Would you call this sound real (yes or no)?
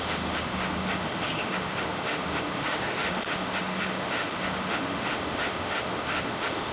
no